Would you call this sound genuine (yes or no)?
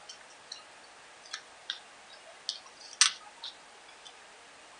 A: yes